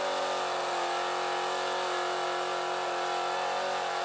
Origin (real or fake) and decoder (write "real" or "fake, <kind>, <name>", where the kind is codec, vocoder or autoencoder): real